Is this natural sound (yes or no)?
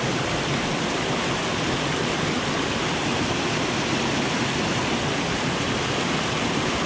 yes